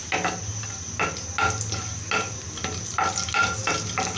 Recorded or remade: recorded